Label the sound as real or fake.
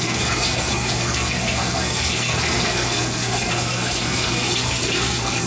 fake